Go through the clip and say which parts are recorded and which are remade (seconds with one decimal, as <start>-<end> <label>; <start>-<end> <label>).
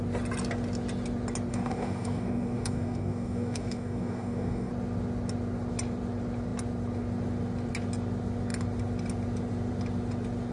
0.0-1.5 recorded; 1.5-4.7 remade; 4.7-10.5 recorded